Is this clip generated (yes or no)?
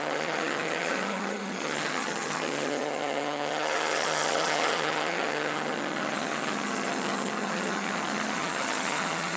yes